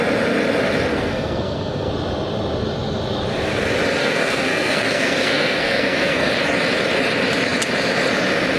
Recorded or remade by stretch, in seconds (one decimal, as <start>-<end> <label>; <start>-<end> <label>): 0.0-0.9 recorded; 0.9-1.9 remade; 1.9-4.0 recorded; 4.0-6.3 remade; 6.3-8.6 recorded